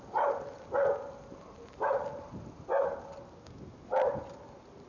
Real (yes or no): yes